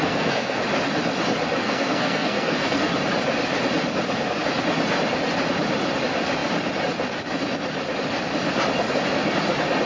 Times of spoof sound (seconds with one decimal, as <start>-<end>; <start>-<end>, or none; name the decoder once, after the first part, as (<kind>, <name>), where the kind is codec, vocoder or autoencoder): 0.0-0.6 (codec, SNAC); 1.6-2.9